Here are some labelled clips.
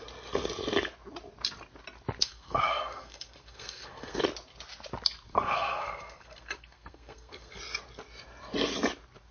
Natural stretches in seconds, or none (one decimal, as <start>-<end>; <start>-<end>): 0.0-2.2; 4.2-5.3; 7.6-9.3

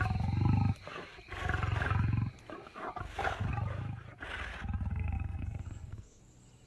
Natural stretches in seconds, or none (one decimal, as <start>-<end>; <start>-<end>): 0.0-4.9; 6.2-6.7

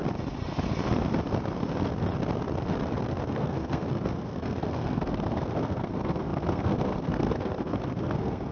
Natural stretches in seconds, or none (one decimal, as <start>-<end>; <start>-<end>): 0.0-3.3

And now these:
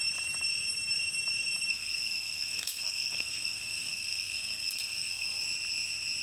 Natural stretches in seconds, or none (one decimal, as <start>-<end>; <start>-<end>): 0.0-1.7; 5.4-6.2